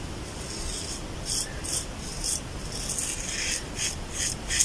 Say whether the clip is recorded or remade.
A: recorded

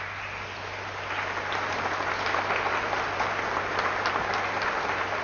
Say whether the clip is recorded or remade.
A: recorded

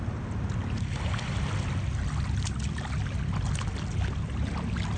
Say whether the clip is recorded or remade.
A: recorded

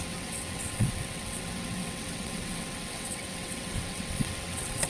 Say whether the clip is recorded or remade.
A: remade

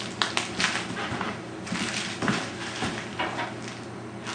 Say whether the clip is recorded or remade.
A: recorded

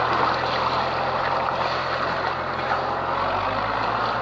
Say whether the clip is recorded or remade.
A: recorded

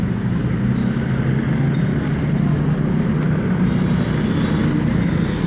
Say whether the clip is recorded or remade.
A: recorded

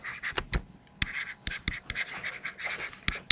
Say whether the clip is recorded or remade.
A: recorded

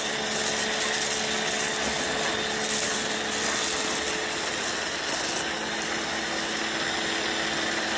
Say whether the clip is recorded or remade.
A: recorded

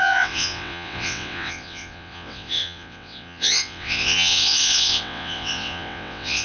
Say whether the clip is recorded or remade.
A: remade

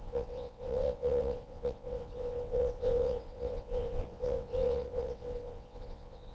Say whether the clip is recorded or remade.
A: remade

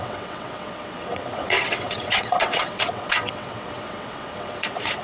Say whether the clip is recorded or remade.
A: remade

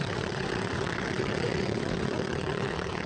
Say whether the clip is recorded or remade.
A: remade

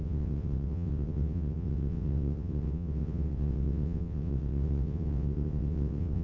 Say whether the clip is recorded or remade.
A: remade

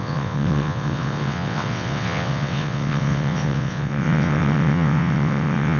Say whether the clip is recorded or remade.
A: remade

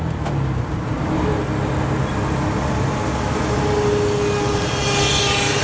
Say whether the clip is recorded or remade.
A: recorded